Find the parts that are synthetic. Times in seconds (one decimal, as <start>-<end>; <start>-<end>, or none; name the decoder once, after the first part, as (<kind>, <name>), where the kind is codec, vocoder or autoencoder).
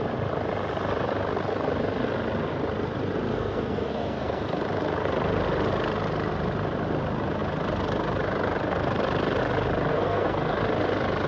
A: 3.3-4.6 (codec, SNAC); 9.9-10.6